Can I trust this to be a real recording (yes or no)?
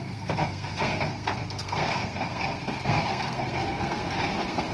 no